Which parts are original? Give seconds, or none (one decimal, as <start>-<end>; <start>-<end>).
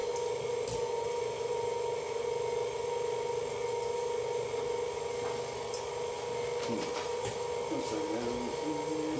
0.0-9.2